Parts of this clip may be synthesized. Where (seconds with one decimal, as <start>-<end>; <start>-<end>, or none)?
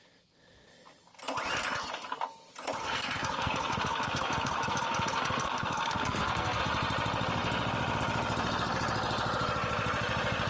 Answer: 2.8-6.6